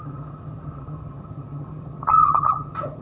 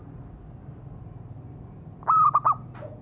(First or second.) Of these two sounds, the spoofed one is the first